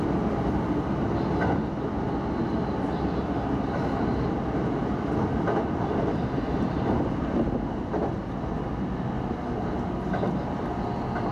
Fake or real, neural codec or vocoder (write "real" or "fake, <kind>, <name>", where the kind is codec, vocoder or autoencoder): real